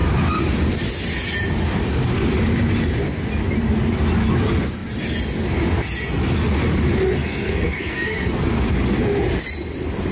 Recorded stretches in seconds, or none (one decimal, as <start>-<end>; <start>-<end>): 0.0-7.2; 8.5-10.1